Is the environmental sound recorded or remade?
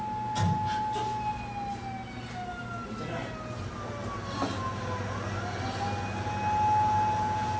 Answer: recorded